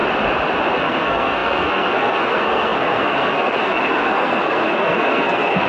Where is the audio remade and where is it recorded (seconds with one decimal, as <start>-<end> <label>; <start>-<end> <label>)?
0.0-0.8 recorded; 0.8-5.7 remade